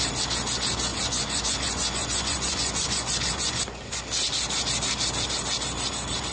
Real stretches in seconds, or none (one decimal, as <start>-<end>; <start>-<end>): 0.0-0.9; 4.0-6.3